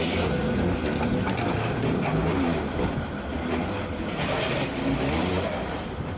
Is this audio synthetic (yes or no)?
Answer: no